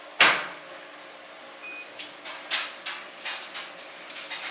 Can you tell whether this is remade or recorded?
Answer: recorded